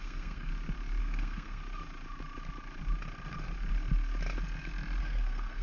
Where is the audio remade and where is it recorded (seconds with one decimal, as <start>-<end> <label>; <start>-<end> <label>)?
0.0-0.5 remade; 0.5-1.0 recorded; 1.0-1.6 remade; 1.6-5.0 recorded; 5.0-5.6 remade